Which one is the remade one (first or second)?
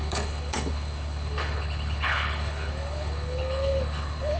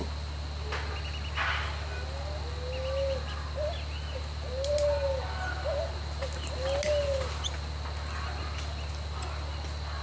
first